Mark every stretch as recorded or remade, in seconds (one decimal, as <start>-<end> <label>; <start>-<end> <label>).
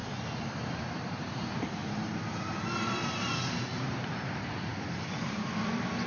0.0-0.8 recorded; 0.8-6.1 remade